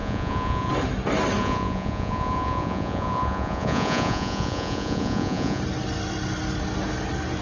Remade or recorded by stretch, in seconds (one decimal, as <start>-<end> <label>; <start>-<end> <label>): 0.0-0.7 remade; 0.7-1.4 recorded; 1.4-5.6 remade; 5.6-7.4 recorded